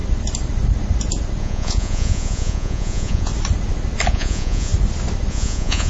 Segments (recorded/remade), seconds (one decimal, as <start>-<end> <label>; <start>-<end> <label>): 0.0-1.4 recorded; 1.4-3.3 remade; 3.3-4.1 recorded; 4.1-4.7 remade; 4.7-5.3 recorded; 5.3-5.9 remade